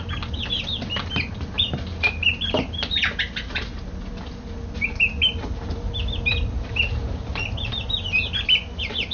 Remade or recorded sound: recorded